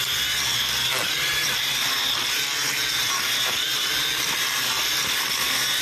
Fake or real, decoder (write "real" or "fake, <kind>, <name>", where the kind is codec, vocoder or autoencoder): real